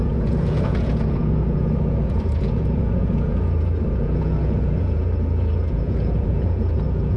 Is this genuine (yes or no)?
no